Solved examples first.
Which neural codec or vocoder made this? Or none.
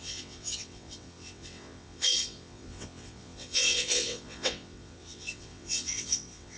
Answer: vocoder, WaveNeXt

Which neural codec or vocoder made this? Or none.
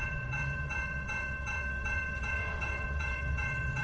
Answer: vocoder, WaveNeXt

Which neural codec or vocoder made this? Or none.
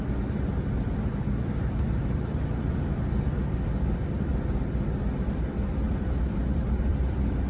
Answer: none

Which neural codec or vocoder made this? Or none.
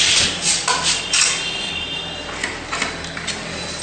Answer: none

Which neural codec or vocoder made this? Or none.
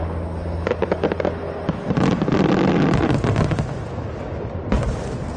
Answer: none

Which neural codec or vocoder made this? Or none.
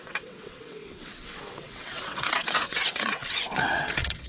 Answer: vocoder, WaveNeXt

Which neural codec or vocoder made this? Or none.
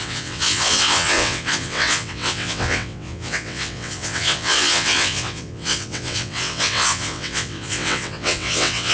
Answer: vocoder, WaveNeXt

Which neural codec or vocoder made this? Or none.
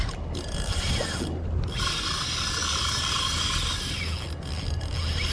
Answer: none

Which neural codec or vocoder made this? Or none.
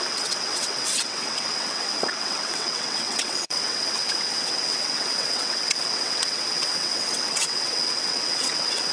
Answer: vocoder, WaveNeXt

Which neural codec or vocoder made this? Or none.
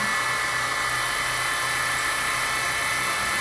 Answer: none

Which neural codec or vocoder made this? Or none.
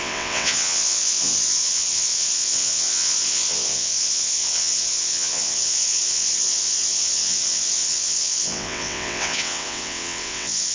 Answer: vocoder, WaveNeXt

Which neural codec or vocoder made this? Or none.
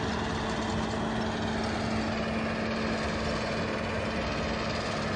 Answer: none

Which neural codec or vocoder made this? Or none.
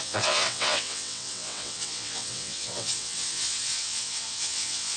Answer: vocoder, WaveNeXt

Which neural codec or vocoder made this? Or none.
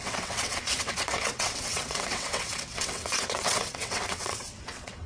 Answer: vocoder, WaveNeXt